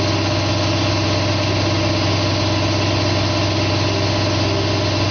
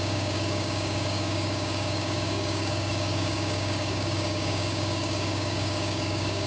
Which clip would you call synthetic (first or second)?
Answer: second